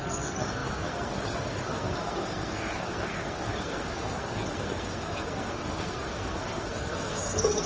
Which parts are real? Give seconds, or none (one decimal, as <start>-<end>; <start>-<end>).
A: none